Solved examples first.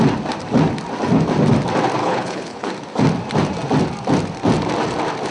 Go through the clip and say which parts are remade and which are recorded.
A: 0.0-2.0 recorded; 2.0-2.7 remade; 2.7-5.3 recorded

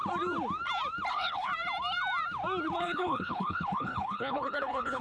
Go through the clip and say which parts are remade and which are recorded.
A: 0.0-1.1 recorded; 1.1-1.5 remade; 1.5-2.8 recorded; 2.8-5.0 remade

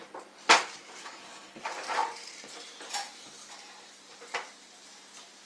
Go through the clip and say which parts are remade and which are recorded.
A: 0.0-1.0 recorded; 1.0-1.6 remade; 1.6-5.5 recorded

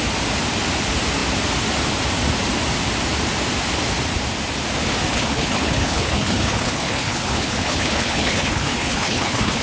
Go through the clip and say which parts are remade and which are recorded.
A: 0.0-5.1 recorded; 5.1-9.6 remade

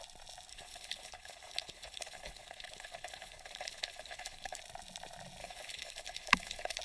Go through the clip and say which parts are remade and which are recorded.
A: 0.0-0.5 recorded; 0.5-4.6 remade; 4.6-5.4 recorded; 5.4-6.8 remade

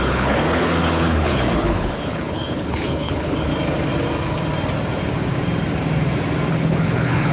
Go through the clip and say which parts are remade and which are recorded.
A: 0.0-3.5 remade; 3.5-6.5 recorded; 6.5-7.3 remade